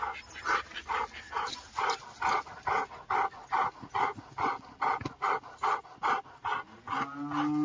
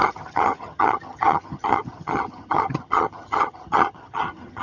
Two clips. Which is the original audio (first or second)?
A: first